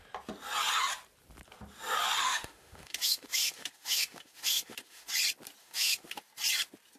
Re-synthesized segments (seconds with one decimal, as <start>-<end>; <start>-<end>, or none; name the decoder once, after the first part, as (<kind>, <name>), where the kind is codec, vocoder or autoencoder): 2.2-5.1 (autoencoder, DAC-VAE); 5.6-6.2